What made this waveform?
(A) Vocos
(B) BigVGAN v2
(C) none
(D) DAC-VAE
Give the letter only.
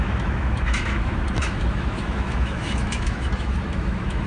D